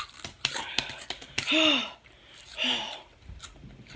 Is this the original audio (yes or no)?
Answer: yes